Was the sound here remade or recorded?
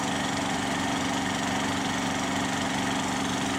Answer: recorded